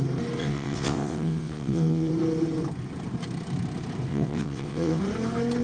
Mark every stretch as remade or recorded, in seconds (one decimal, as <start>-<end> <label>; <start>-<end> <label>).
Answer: 0.0-0.4 recorded; 0.4-2.1 remade; 2.1-4.1 recorded; 4.1-5.0 remade; 5.0-5.6 recorded